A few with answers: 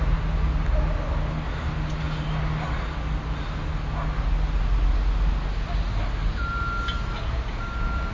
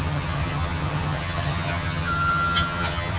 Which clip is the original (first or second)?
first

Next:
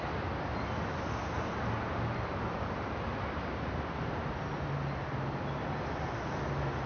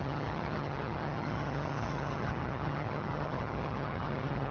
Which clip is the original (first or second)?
first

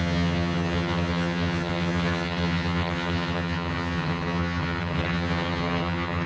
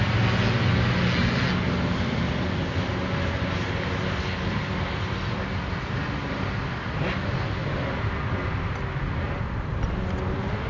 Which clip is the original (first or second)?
second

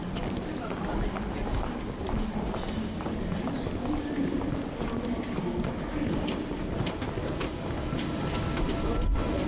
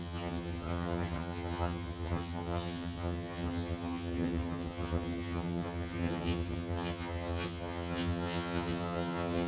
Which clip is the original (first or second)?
first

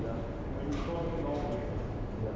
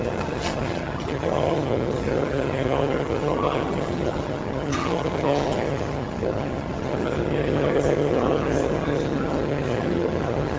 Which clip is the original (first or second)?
first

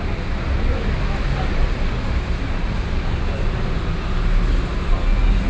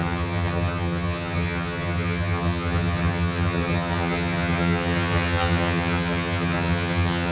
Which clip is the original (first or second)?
first